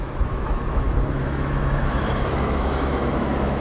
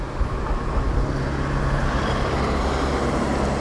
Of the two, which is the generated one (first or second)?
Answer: first